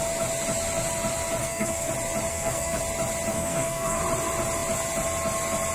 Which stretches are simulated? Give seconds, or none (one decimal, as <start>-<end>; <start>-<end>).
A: 1.4-1.9; 2.3-2.8; 3.3-4.0